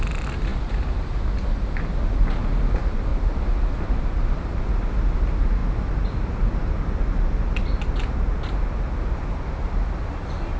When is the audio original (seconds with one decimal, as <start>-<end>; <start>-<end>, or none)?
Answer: 0.0-10.6